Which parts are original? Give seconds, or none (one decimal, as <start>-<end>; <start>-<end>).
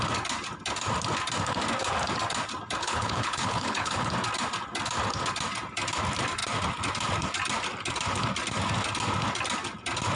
0.0-2.8; 4.1-10.2